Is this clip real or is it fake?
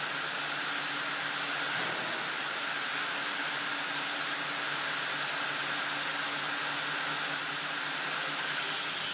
real